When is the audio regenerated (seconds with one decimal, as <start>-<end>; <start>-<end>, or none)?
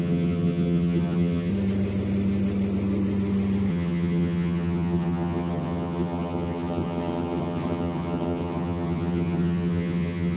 0.0-1.5; 3.7-10.4